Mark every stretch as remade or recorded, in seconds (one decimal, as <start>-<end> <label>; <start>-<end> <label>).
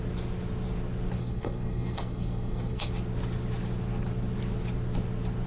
0.0-1.2 recorded; 1.2-2.9 remade; 2.9-5.5 recorded